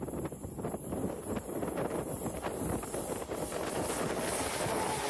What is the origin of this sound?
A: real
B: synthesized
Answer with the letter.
A